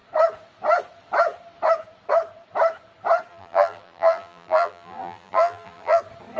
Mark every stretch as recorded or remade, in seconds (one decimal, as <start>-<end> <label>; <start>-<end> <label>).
0.0-3.3 recorded; 3.3-6.0 remade; 6.0-6.4 recorded

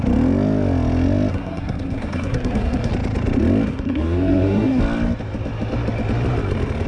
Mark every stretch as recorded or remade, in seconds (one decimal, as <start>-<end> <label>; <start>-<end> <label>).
0.0-1.3 recorded; 1.3-2.9 remade; 2.9-3.7 recorded; 3.7-4.8 remade; 4.8-6.9 recorded